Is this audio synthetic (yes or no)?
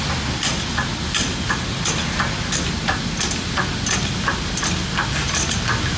no